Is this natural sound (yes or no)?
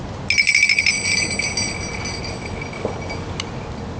yes